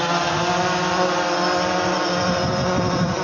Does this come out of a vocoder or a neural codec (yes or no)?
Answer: no